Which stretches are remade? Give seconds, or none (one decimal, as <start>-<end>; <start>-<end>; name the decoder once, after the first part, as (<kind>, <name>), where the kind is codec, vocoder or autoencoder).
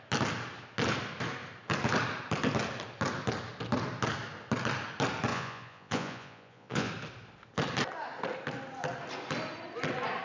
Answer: 5.3-6.9 (vocoder, Vocos)